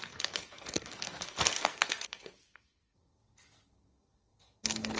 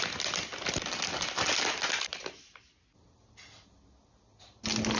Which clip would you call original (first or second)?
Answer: second